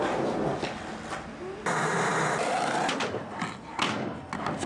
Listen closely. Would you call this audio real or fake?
real